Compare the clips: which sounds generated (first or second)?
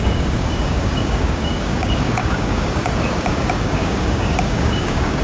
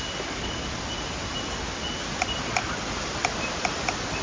first